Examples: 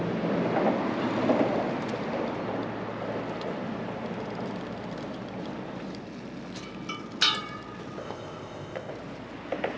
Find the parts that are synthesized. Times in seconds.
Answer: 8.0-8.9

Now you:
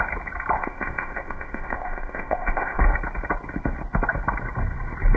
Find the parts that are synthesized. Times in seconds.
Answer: 0.6-2.8

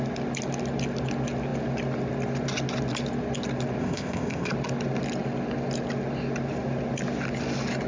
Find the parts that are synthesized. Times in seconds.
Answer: 3.8-4.5

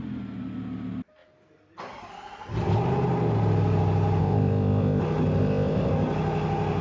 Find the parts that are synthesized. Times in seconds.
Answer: 4.2-5.0; 5.4-5.9

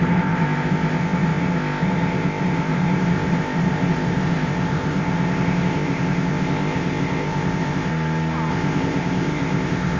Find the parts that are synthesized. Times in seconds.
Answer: 0.0-7.9; 8.5-10.0

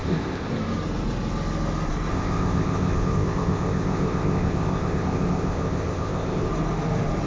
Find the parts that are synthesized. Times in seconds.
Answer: 0.0-0.5; 2.1-6.5

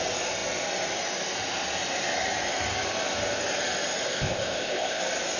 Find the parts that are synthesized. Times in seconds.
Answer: 4.1-5.0

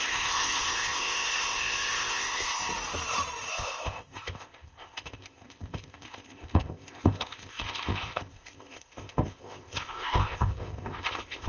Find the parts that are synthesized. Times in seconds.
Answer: 0.0-2.6; 3.5-11.5